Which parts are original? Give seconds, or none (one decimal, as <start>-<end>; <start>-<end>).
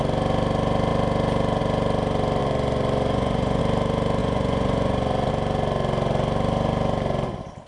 0.0-2.4; 3.6-4.2; 5.3-7.7